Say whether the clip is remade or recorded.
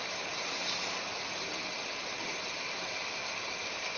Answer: recorded